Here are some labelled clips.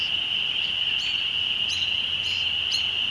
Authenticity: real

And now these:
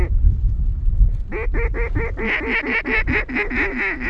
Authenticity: real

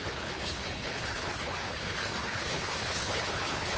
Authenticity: fake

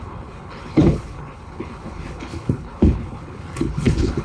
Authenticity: fake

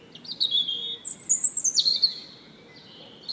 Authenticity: real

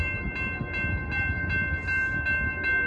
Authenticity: real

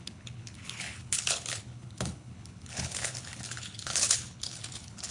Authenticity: fake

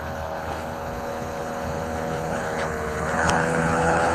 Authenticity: fake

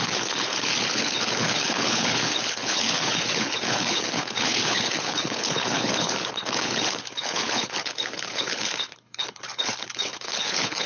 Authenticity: fake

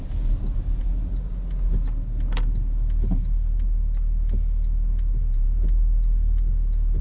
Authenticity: real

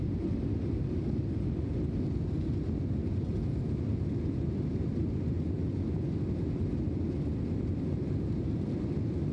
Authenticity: real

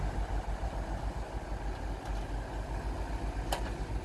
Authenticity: real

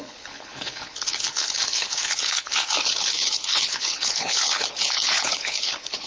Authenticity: fake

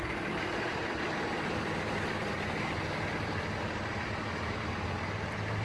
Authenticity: real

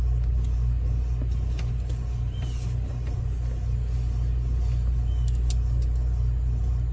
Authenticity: real